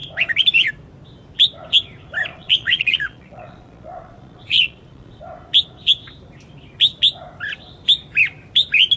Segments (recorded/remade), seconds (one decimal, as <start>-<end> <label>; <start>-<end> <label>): 0.0-2.3 recorded; 2.3-5.2 remade; 5.2-9.0 recorded